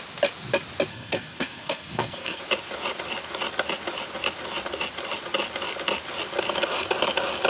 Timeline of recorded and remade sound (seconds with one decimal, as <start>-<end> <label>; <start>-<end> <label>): 0.0-0.9 recorded; 0.9-2.4 remade; 2.4-7.5 recorded